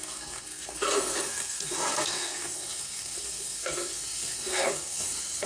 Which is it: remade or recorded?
remade